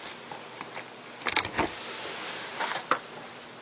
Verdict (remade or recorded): recorded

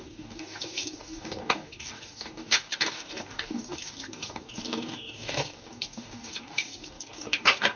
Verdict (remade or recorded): remade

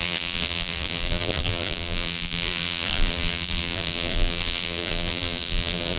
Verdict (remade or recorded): remade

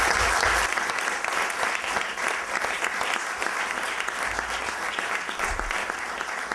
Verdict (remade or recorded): recorded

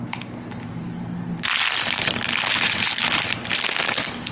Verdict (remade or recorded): recorded